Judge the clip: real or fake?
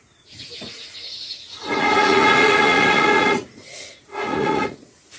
fake